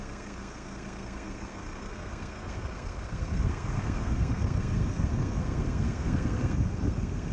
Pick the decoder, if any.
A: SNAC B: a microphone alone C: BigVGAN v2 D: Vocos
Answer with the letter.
A